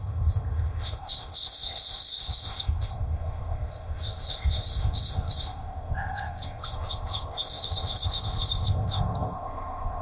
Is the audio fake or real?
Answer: fake